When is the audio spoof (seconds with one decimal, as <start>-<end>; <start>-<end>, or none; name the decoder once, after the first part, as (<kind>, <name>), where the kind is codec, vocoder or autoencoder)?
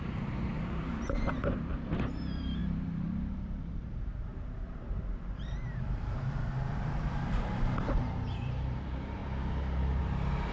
0.0-1.7 (vocoder, BigVGAN v2); 2.2-9.2; 10.0-10.5